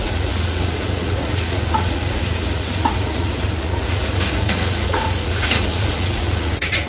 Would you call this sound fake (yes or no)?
yes